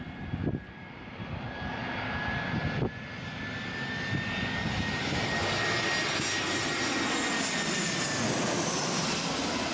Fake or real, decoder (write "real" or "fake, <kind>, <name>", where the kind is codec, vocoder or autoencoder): real